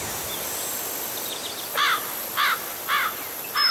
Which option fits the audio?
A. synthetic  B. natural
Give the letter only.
B